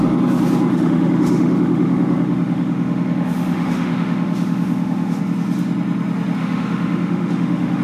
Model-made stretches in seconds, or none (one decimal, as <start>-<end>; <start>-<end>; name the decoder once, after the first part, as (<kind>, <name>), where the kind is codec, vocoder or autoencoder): 0.7-5.2 (autoencoder, DAC-VAE); 6.4-7.8